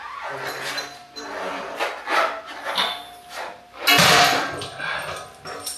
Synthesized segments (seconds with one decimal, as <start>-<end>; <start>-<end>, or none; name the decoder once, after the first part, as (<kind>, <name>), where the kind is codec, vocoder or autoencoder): none